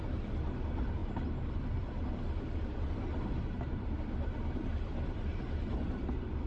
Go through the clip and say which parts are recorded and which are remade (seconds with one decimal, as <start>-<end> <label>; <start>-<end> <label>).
0.0-6.5 recorded